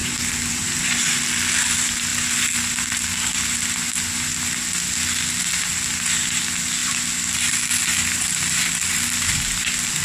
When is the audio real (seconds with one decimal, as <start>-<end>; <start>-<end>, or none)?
0.0-10.0

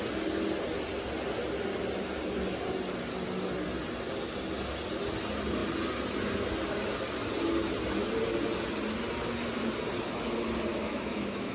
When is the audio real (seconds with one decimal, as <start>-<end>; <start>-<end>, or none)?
0.0-10.7